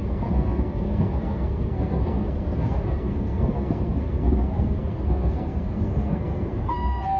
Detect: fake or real fake